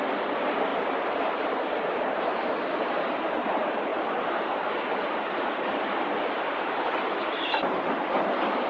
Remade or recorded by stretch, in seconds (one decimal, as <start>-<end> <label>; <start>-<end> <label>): 0.0-0.7 recorded; 0.7-1.9 remade; 1.9-8.7 recorded